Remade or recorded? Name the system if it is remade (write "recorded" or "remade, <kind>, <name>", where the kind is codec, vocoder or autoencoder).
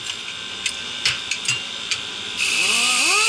recorded